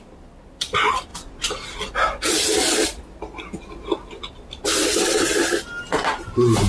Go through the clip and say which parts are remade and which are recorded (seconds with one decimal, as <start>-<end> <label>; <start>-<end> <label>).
0.0-6.7 recorded